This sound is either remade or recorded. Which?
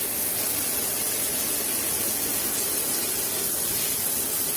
recorded